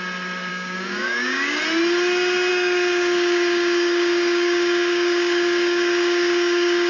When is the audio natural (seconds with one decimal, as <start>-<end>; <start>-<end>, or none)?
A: 0.0-0.5; 1.6-2.5